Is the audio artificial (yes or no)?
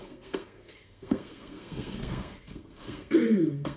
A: yes